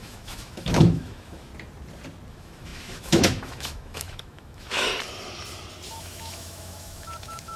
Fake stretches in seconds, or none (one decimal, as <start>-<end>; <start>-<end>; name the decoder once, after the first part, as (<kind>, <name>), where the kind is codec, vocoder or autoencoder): 0.0-1.5 (autoencoder, DAC-VAE); 2.3-4.9; 5.9-7.6